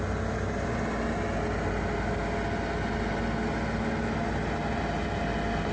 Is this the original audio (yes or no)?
yes